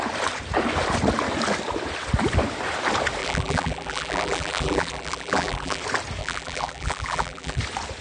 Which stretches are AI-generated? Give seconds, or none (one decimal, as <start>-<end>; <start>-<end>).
3.2-5.8; 6.2-7.6